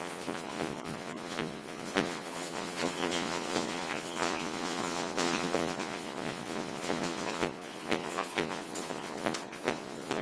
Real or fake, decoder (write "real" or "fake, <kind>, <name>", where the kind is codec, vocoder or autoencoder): fake, vocoder, Vocos